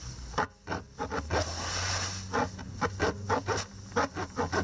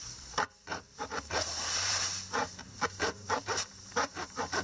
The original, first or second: first